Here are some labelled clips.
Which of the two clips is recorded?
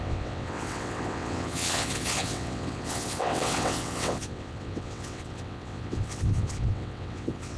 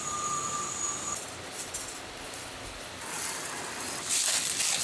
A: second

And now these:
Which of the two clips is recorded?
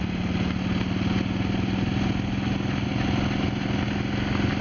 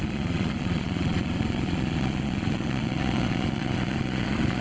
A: first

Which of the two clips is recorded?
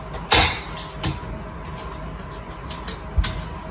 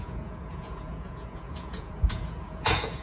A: first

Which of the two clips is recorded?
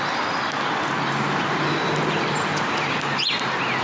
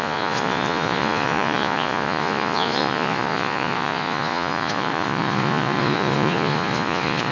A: first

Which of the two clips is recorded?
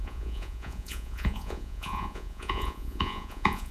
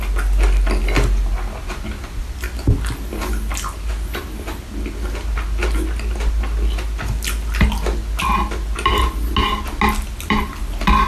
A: second